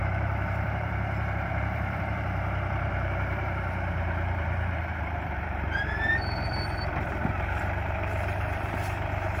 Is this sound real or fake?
fake